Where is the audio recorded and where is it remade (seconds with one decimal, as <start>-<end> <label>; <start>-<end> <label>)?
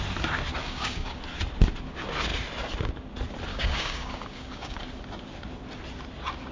0.0-0.6 recorded; 0.6-1.2 remade; 1.2-3.5 recorded; 3.5-4.8 remade; 4.8-6.5 recorded